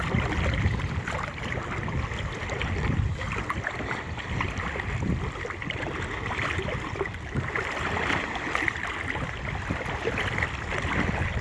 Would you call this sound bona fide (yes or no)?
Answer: yes